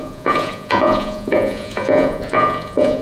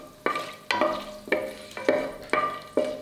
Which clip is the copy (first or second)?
first